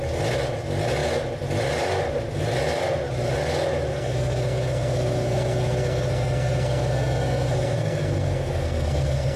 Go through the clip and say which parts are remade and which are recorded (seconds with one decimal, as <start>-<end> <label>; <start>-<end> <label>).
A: 0.0-3.9 recorded; 3.9-9.4 remade